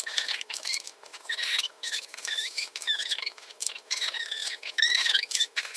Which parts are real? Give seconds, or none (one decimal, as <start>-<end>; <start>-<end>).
none